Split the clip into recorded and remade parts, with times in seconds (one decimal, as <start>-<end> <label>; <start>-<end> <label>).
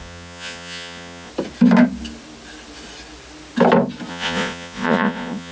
0.0-1.3 remade; 1.3-4.1 recorded; 4.1-5.5 remade